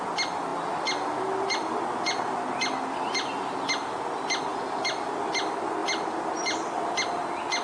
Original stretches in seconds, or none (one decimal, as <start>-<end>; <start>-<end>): 0.0-7.6

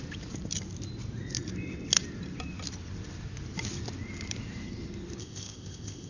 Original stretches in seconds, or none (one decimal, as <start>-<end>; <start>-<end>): 0.0-5.2

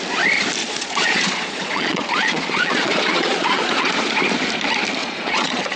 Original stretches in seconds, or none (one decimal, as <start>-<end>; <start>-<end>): 0.0-0.6; 4.1-5.0

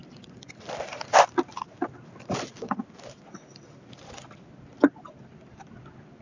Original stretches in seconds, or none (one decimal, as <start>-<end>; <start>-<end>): 0.0-6.2